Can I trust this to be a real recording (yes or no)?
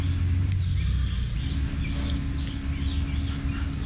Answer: yes